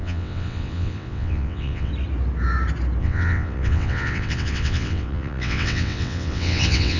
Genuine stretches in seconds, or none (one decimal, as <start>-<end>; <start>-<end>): 1.9-3.0

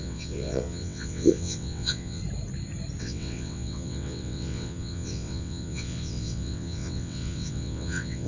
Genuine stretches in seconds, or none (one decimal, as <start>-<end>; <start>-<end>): 2.2-3.0

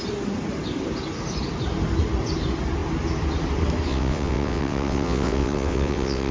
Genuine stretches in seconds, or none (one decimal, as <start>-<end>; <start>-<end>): 0.0-3.9

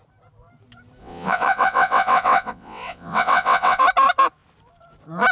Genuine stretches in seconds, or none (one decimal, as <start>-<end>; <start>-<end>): 0.0-1.0; 3.8-5.3

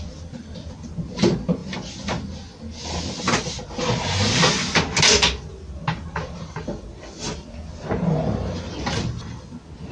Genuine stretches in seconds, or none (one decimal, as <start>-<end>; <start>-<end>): 0.0-9.9

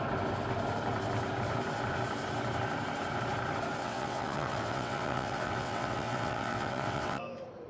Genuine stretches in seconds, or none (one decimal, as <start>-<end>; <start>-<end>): 0.0-3.8; 7.2-7.7